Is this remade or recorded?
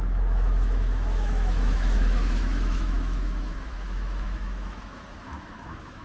remade